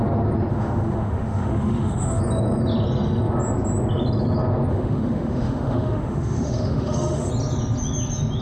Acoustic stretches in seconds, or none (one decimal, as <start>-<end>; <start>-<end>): 0.0-0.5; 2.2-4.7; 7.3-8.4